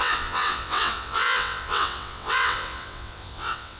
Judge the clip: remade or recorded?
remade